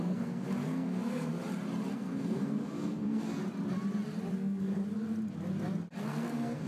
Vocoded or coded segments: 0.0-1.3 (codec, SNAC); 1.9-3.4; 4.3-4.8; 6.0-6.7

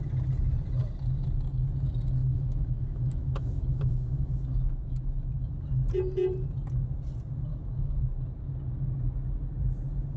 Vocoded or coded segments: 2.2-5.5 (autoencoder, DAC-VAE); 7.5-8.0

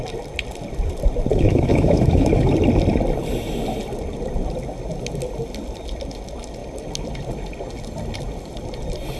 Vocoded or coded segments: 1.3-2.5 (autoencoder, DAC-VAE)